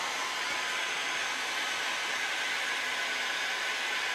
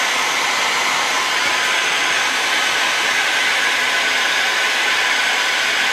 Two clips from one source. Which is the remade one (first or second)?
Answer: second